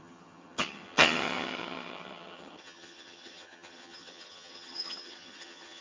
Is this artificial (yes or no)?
yes